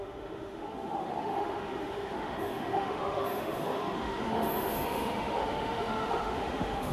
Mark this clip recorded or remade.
remade